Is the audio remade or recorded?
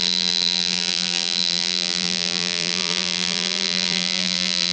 remade